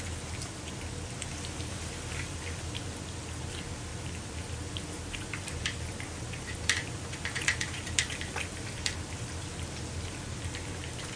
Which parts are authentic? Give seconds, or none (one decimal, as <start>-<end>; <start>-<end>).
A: 0.0-3.9; 8.8-11.2